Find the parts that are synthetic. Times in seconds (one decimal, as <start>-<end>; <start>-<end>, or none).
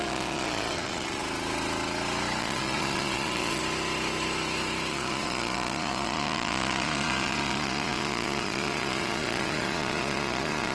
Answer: 0.0-1.2; 2.4-3.6; 4.9-10.7